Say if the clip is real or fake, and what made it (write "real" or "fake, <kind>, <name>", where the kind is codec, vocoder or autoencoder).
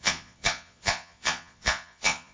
fake, vocoder, Vocos